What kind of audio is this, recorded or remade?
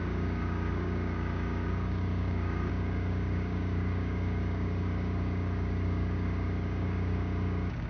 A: remade